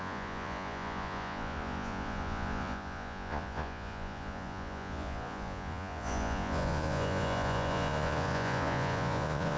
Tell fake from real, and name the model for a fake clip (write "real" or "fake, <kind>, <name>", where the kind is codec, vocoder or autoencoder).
fake, vocoder, Vocos